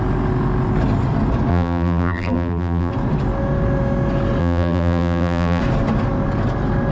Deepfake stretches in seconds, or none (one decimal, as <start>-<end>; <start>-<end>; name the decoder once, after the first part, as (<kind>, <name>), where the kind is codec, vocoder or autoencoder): 1.5-2.9 (vocoder, BigVGAN v2); 4.4-5.6